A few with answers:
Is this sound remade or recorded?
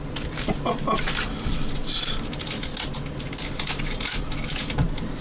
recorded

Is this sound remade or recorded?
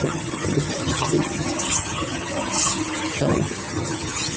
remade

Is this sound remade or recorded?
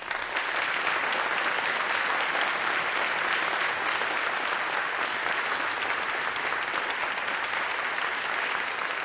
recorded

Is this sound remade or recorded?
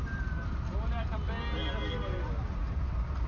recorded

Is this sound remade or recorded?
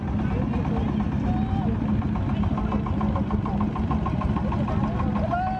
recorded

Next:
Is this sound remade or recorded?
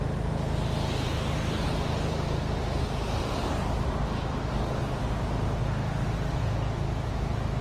recorded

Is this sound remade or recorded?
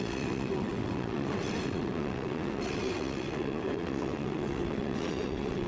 remade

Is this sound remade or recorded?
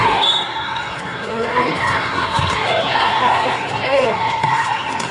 remade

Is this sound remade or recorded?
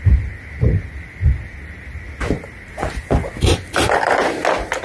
recorded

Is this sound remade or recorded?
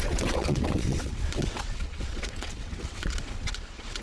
remade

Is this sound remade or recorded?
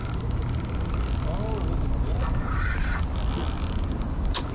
recorded